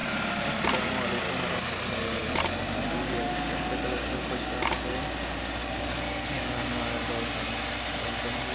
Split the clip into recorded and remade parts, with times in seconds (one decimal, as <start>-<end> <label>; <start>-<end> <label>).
0.0-5.6 recorded; 5.6-6.5 remade; 6.5-8.5 recorded